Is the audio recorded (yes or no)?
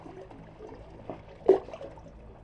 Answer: yes